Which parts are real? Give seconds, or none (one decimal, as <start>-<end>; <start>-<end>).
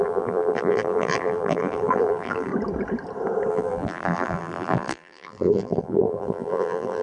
2.5-3.5